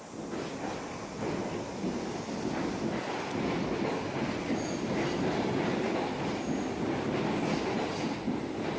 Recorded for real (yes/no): yes